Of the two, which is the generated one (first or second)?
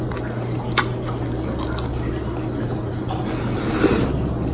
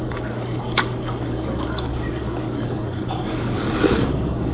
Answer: second